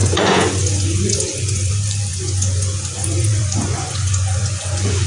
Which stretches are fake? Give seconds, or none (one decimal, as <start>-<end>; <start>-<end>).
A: 0.0-1.7; 2.1-5.1